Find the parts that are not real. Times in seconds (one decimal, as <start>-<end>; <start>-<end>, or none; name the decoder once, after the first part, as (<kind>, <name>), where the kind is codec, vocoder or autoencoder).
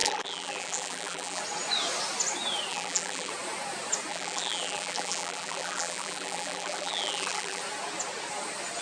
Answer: 0.0-1.4 (vocoder, BigVGAN v2); 2.7-3.3; 4.1-7.6